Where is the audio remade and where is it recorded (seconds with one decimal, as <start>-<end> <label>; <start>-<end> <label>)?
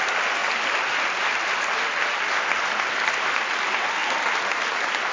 0.0-5.1 recorded